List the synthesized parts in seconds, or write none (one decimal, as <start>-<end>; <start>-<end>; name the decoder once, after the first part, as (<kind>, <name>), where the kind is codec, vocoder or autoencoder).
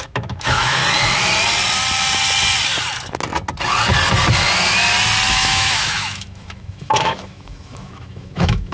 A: 0.0-0.8 (autoencoder, DAC-VAE); 5.3-8.7